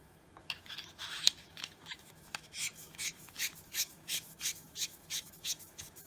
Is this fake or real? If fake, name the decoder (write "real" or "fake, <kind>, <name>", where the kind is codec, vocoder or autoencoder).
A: fake, autoencoder, DAC-VAE